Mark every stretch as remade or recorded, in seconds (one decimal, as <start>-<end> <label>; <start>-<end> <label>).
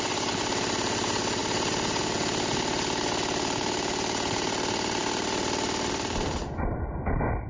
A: 0.0-7.5 recorded